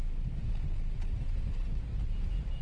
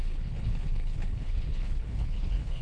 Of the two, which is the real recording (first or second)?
first